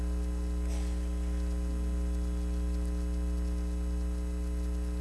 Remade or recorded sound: recorded